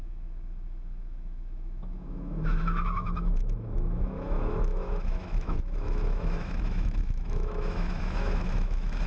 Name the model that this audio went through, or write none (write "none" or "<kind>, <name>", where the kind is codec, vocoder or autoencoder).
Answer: autoencoder, DAC-VAE